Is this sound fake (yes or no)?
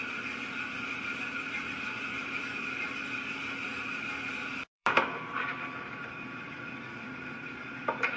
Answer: yes